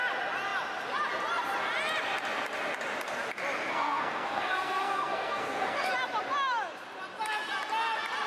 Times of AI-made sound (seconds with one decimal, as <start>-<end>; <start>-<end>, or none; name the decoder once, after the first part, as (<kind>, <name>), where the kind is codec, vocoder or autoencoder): 3.7-5.9 (codec, SNAC)